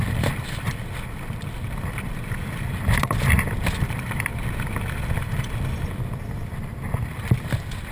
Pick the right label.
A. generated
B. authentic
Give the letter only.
A